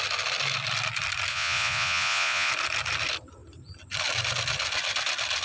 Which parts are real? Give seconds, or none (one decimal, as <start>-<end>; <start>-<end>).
0.0-1.3; 2.5-5.4